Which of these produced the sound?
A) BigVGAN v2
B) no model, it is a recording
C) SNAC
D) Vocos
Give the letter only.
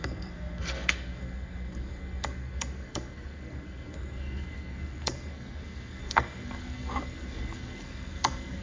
C